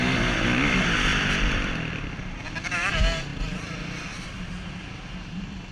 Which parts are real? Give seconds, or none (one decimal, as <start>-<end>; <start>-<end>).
0.0-1.1; 2.9-5.7